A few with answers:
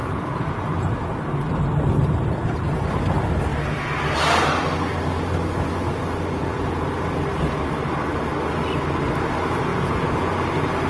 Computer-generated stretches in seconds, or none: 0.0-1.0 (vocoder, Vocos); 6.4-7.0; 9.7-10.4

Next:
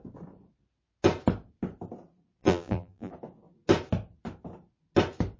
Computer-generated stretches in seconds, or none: 2.4-3.1 (vocoder, BigVGAN v2)

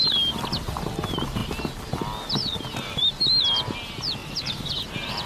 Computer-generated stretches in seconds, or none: 4.2-4.8 (vocoder, BigVGAN v2)

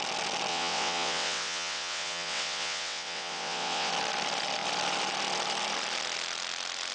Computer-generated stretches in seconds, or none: 0.5-3.9 (vocoder, WaveNeXt)

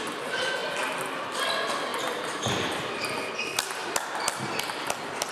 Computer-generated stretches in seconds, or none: none

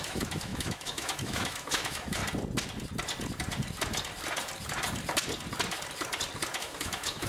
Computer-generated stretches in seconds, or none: 0.0-2.2 (autoencoder, DAC-VAE); 6.6-7.3

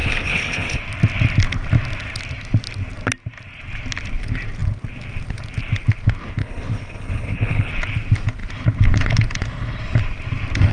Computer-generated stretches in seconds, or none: 0.0-0.8 (codec, HILCodec); 6.4-7.7

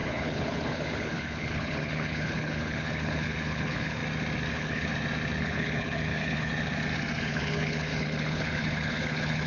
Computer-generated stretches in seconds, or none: 0.0-4.0 (codec, HILCodec); 4.5-4.9; 5.4-6.5; 7.2-9.5